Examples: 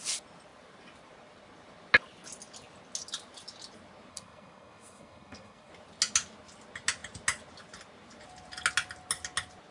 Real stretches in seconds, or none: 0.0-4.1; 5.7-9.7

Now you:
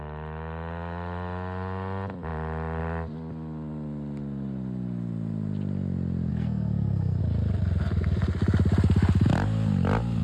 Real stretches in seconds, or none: 0.0-6.3; 7.2-10.2

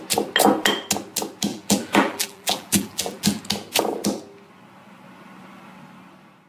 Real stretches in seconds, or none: 0.0-1.5; 3.4-6.5